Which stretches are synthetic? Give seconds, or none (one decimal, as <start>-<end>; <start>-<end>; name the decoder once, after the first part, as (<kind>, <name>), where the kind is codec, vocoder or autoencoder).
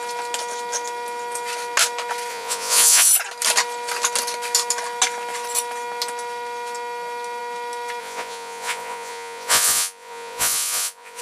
2.3-3.1 (vocoder, Vocos); 8.0-11.2